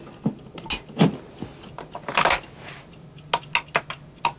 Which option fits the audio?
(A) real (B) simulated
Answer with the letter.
A